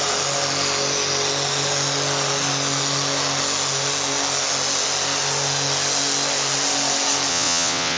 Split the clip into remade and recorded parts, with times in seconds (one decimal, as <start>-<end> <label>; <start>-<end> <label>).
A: 0.0-7.3 recorded; 7.3-8.0 remade